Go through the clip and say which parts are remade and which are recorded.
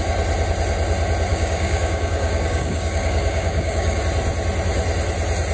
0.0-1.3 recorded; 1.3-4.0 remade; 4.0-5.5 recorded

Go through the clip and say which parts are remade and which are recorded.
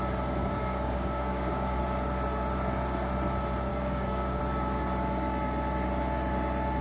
0.0-0.4 recorded; 0.4-1.8 remade; 1.8-3.7 recorded; 3.7-4.4 remade; 4.4-6.8 recorded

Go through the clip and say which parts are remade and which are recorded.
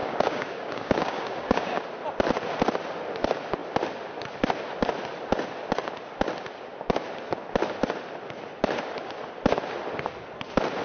0.0-1.8 remade; 1.8-10.8 recorded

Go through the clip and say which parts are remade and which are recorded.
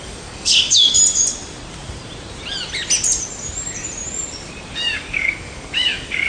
0.0-1.0 remade; 1.0-4.7 recorded; 4.7-6.3 remade